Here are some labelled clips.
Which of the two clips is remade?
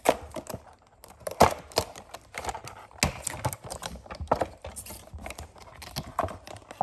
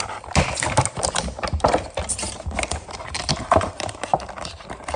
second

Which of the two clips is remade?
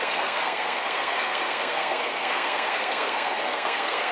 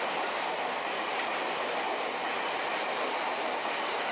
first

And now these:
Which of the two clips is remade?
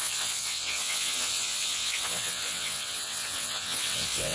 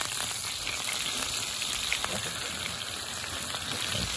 first